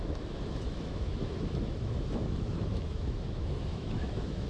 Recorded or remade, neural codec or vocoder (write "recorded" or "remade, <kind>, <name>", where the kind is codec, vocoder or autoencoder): remade, autoencoder, DAC-VAE